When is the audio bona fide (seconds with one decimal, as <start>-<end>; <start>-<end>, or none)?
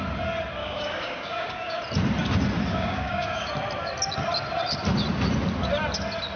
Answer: 0.0-0.6; 1.8-2.7; 3.5-6.4